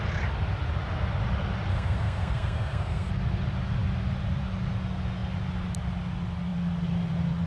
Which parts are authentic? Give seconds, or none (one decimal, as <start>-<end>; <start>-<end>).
0.0-1.7; 3.1-7.5